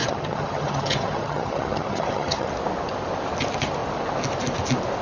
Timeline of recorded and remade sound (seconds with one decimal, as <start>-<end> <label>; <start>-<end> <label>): 0.0-2.5 remade; 2.5-5.0 recorded